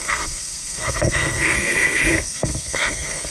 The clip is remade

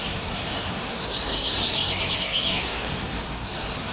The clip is remade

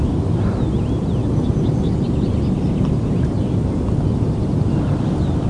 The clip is recorded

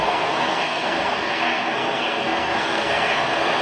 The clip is remade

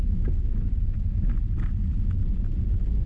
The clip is recorded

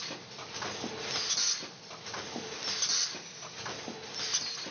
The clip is recorded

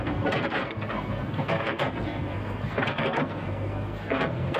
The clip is remade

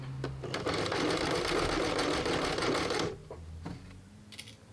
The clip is recorded